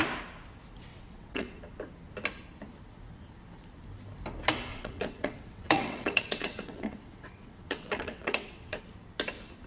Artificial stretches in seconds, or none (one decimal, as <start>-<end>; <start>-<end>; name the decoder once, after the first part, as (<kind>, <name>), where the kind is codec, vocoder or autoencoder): 0.9-1.6 (vocoder, WaveNeXt); 4.7-8.8